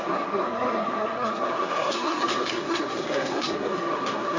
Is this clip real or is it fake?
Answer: fake